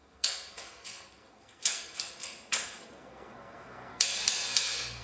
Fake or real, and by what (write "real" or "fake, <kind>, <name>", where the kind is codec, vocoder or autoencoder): fake, codec, SNAC